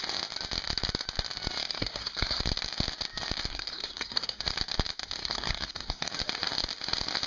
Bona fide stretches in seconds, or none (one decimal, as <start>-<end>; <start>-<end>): 0.0-1.6; 2.4-3.5; 4.4-5.2; 6.1-7.3